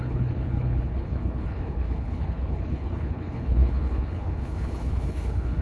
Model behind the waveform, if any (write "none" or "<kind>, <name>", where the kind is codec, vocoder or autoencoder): codec, HILCodec